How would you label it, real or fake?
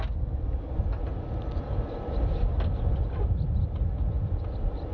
real